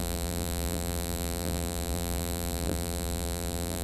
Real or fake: fake